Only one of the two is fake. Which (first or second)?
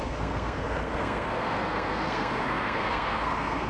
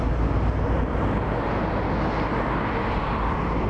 first